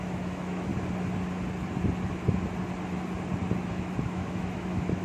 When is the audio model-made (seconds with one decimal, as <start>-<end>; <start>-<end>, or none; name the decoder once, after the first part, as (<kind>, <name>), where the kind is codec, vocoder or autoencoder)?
0.0-0.7 (autoencoder, DAC-VAE); 3.7-5.0